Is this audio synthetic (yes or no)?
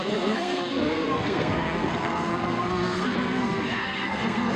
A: yes